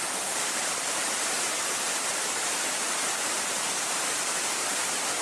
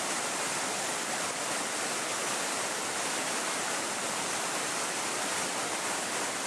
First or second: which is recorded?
second